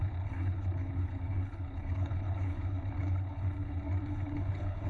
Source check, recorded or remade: remade